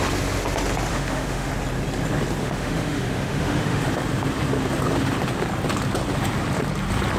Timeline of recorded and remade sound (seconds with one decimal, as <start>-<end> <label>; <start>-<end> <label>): 0.0-0.9 recorded; 0.9-1.5 remade; 1.5-2.4 recorded; 2.4-3.8 remade; 3.8-7.2 recorded

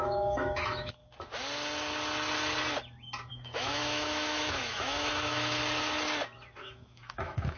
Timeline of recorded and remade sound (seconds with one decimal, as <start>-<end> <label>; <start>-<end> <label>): 0.0-1.0 remade; 1.0-3.3 recorded; 3.3-5.6 remade; 5.6-6.6 recorded; 6.6-7.6 remade

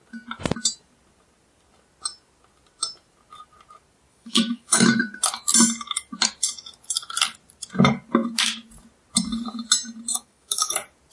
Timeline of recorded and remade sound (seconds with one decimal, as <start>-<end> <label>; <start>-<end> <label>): 0.0-4.1 recorded; 4.1-5.0 remade; 5.0-10.1 recorded; 10.1-10.7 remade; 10.7-11.1 recorded

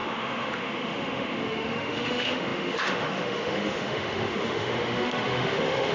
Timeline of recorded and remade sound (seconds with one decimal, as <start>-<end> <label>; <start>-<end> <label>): 0.0-5.9 remade

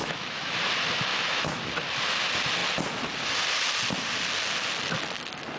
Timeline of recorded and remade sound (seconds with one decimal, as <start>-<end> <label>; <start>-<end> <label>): 0.0-0.7 remade; 0.7-1.1 recorded; 1.1-1.6 remade; 1.6-5.6 recorded

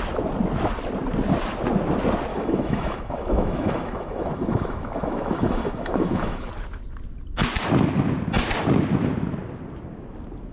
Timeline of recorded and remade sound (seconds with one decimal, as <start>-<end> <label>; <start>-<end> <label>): 0.0-2.3 recorded; 2.3-6.5 remade; 6.5-10.5 recorded

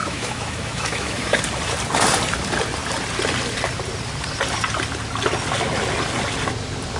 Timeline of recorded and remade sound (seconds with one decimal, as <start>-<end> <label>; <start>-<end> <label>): 0.0-1.4 remade; 1.4-7.0 recorded

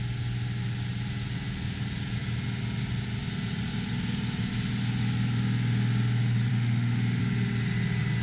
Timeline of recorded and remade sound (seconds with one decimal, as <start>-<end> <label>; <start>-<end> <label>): 0.0-6.5 recorded; 6.5-7.2 remade; 7.2-8.2 recorded